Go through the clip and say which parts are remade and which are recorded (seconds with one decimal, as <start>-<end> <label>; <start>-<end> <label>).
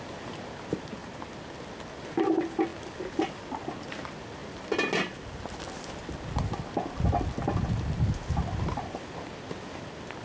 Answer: 0.0-10.2 recorded